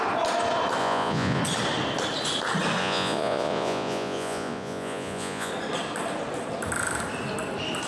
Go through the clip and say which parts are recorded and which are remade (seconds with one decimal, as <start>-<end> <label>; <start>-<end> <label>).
0.0-0.8 recorded; 0.8-1.4 remade; 1.4-2.8 recorded; 2.8-5.5 remade; 5.5-7.9 recorded